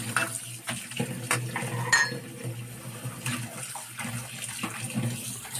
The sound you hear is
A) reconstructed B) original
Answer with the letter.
B